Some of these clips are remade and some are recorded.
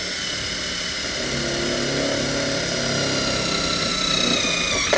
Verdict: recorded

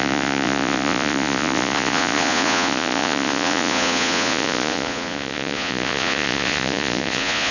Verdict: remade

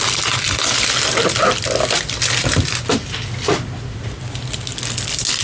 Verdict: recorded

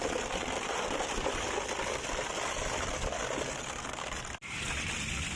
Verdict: recorded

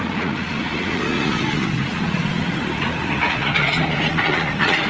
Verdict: remade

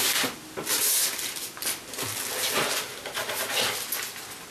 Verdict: recorded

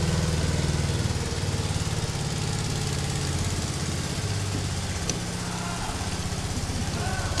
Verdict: recorded